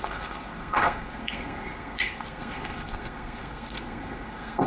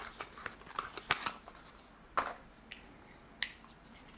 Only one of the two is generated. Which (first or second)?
first